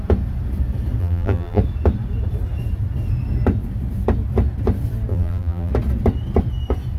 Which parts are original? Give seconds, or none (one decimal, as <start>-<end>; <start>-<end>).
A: 0.0-1.0; 1.6-5.1; 5.7-7.0